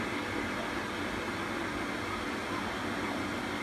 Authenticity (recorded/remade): recorded